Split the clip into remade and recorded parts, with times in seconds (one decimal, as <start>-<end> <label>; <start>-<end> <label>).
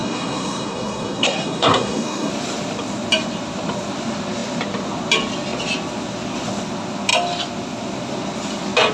0.0-2.3 remade; 2.3-8.9 recorded